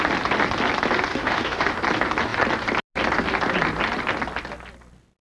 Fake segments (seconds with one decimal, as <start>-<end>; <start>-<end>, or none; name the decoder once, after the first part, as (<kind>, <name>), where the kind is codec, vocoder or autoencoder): 1.1-1.7 (autoencoder, DAC-VAE)